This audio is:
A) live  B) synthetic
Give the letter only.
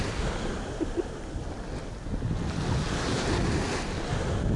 A